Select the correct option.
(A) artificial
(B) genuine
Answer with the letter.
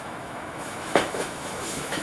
A